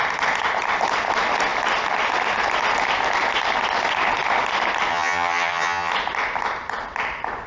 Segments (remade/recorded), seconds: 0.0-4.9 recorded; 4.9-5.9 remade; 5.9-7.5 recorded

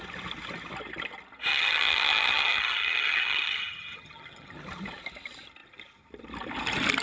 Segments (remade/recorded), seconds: 0.0-1.5 recorded; 1.5-4.5 remade; 4.5-7.0 recorded

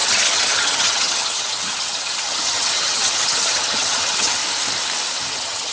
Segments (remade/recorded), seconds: 0.0-4.4 remade; 4.4-5.3 recorded; 5.3-5.7 remade

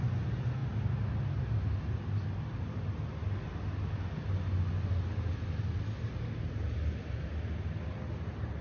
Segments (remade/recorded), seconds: 0.0-8.6 recorded

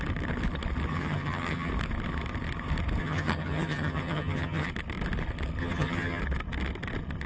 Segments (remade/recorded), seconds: 0.0-0.9 recorded; 0.9-1.7 remade; 1.7-3.0 recorded; 3.0-4.7 remade; 4.7-5.6 recorded; 5.6-6.2 remade; 6.2-7.3 recorded

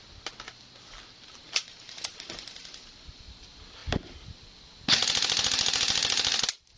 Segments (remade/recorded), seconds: 0.0-6.8 recorded

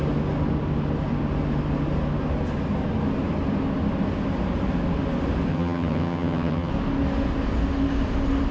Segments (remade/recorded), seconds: 0.0-5.5 recorded; 5.5-6.7 remade; 6.7-8.5 recorded